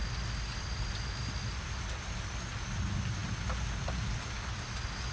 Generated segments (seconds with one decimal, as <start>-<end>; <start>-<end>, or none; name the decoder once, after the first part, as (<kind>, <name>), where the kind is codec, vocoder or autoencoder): none